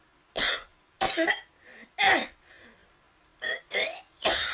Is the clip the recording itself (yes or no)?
yes